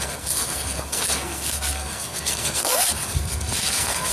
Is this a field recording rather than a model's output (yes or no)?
no